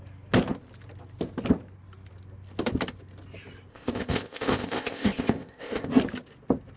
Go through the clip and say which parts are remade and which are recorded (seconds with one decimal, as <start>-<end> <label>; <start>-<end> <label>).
0.0-3.7 recorded; 3.7-5.9 remade; 5.9-6.8 recorded